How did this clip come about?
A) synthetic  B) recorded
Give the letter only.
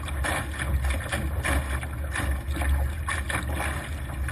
B